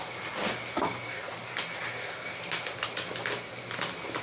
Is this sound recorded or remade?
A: recorded